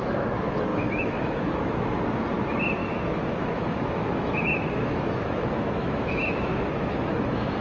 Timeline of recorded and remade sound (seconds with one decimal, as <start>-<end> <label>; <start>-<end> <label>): 0.0-0.7 recorded; 0.7-2.0 remade; 2.0-2.8 recorded; 2.8-7.6 remade

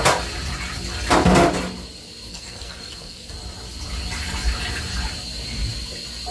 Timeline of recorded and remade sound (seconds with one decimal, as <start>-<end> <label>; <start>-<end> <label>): 0.0-2.3 recorded; 2.3-3.3 remade; 3.3-6.3 recorded

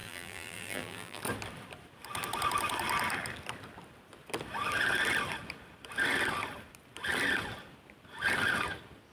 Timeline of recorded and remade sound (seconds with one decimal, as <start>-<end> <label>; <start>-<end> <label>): 0.0-1.2 remade; 1.2-9.1 recorded

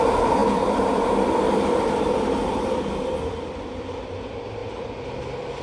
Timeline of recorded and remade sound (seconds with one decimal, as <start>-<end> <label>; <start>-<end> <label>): 0.0-5.6 remade

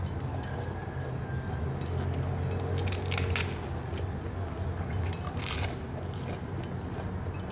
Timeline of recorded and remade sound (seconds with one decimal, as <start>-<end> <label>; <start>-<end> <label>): 0.0-7.5 recorded

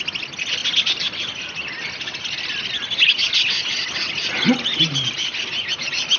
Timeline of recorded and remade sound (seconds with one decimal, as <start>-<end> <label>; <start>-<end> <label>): 0.0-6.2 recorded

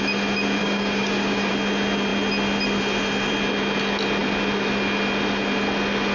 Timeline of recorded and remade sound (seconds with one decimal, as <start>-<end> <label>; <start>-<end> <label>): 0.0-0.6 recorded; 0.6-1.5 remade; 1.5-6.1 recorded

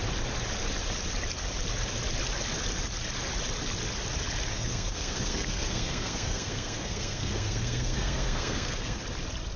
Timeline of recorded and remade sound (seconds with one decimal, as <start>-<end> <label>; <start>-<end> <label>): 0.0-4.5 recorded; 4.5-9.0 remade; 9.0-9.6 recorded